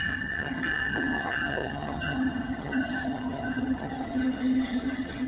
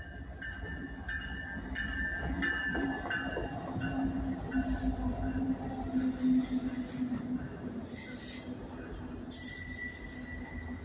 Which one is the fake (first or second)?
first